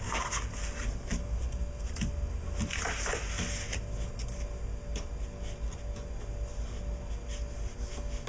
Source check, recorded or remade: recorded